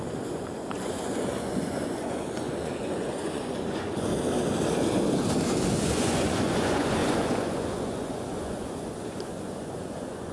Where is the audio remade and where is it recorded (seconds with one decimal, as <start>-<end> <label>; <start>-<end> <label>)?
0.0-4.1 remade; 4.1-5.7 recorded; 5.7-10.3 remade